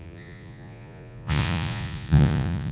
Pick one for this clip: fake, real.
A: fake